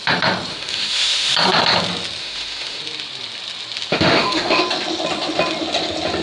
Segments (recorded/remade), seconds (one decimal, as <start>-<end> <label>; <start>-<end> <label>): 0.0-0.5 recorded; 0.5-1.3 remade; 1.3-2.2 recorded; 2.2-2.8 remade; 2.8-3.9 recorded; 3.9-4.6 remade; 4.6-6.2 recorded